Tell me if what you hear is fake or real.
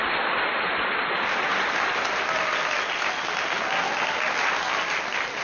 real